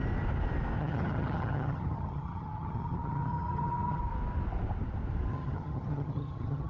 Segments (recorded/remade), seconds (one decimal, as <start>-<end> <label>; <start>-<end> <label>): 0.0-0.8 recorded; 0.8-4.0 remade; 4.0-5.3 recorded; 5.3-6.7 remade